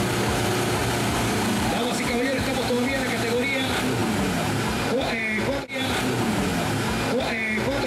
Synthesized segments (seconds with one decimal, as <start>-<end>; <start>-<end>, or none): 0.0-0.8; 1.9-6.5; 7.2-7.9